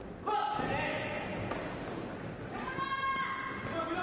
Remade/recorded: recorded